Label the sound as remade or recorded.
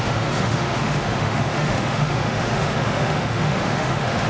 remade